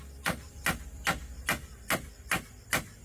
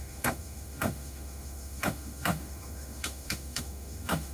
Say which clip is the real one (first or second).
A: first